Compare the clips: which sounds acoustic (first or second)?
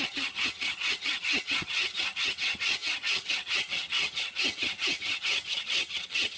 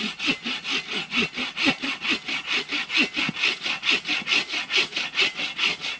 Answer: second